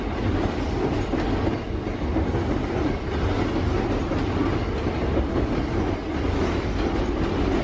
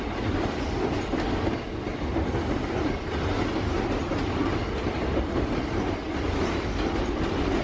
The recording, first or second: first